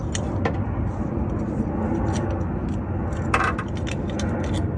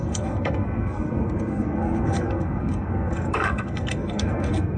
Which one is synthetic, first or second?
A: second